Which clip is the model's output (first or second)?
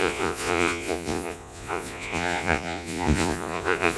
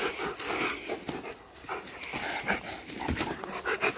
first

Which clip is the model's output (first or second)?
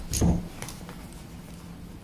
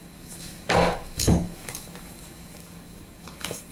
second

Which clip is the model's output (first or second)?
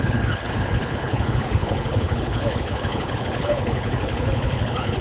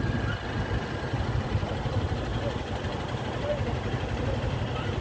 first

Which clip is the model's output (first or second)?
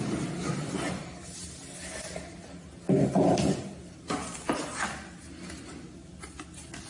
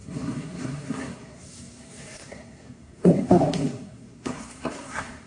second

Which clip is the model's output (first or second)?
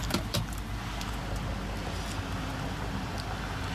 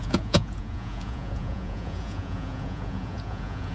second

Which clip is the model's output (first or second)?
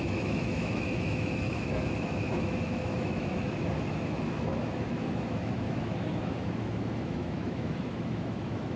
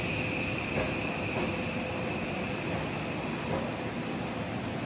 first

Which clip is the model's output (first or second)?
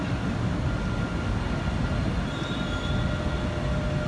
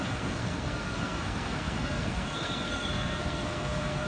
second